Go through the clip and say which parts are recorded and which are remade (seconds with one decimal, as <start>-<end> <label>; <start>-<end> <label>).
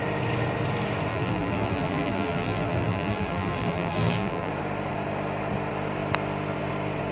0.0-1.1 recorded; 1.1-4.5 remade; 4.5-7.1 recorded